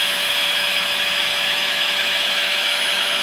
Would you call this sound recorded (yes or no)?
no